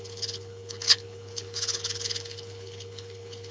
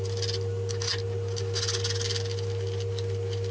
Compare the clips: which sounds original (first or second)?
second